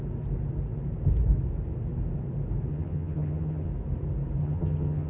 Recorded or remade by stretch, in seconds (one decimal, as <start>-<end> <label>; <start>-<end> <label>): 0.0-2.7 recorded; 2.7-3.7 remade; 3.7-4.4 recorded; 4.4-5.1 remade